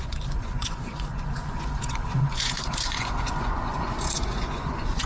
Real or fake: fake